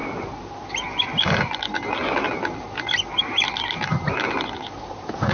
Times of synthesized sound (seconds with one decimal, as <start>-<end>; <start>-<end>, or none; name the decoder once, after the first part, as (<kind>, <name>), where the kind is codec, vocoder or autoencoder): none